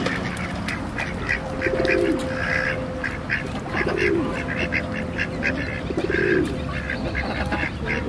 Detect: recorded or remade recorded